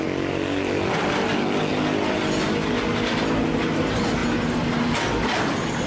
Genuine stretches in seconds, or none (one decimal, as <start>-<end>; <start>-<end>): 0.0-5.9